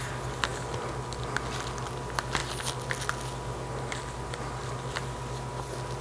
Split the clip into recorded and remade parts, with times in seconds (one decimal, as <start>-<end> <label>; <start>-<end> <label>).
0.0-6.0 recorded